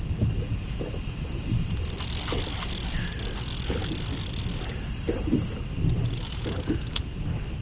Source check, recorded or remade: recorded